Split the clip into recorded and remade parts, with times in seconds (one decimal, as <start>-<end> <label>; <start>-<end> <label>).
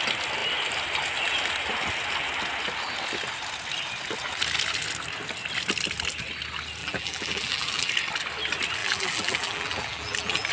0.0-6.8 recorded; 6.8-7.9 remade; 7.9-8.8 recorded; 8.8-10.5 remade